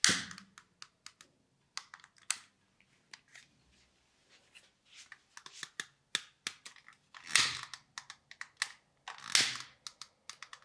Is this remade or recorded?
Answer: recorded